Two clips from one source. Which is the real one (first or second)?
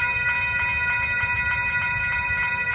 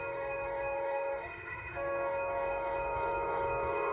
first